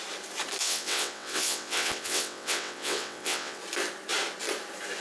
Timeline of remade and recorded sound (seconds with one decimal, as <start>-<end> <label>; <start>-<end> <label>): 0.0-0.6 recorded; 0.6-3.6 remade; 3.6-5.0 recorded